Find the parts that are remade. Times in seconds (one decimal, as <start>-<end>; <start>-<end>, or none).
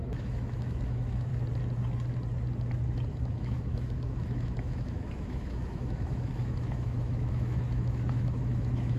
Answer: 0.0-1.3; 3.1-9.0